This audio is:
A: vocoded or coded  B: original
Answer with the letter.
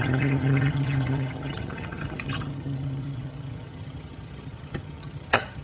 A